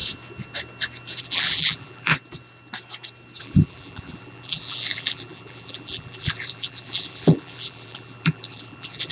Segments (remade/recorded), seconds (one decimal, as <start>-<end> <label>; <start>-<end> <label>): 0.0-1.2 recorded; 1.2-2.1 remade; 2.1-3.4 recorded; 3.4-9.1 remade